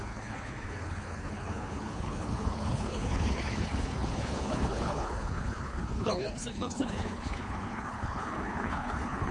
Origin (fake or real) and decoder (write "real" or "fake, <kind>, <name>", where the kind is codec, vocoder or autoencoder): fake, codec, HILCodec